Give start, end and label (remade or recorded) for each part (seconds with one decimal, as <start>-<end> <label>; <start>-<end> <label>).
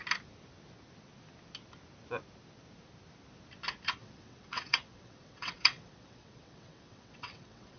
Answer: 0.0-4.0 recorded; 4.0-7.8 remade